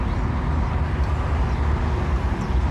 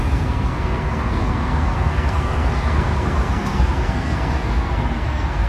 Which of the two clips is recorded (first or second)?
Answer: first